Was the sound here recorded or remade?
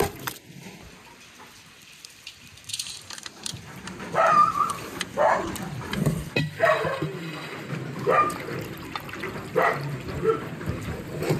remade